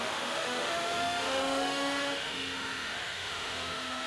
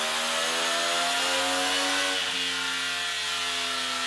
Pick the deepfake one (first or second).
first